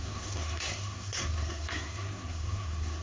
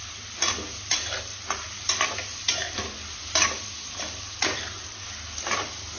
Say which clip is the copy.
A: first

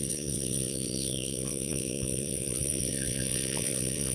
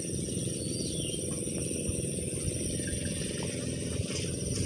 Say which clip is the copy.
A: first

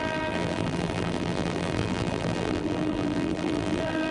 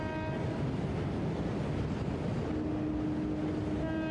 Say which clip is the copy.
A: first